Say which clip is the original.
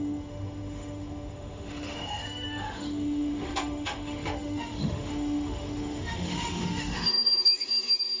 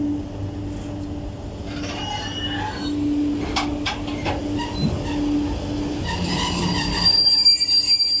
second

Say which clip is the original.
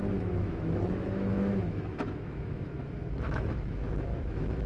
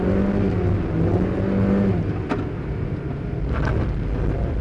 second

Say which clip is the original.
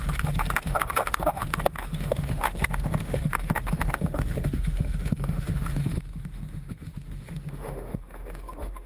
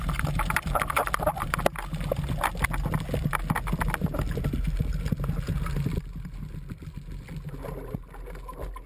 second